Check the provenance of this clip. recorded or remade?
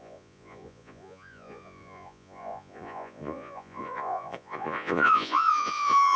remade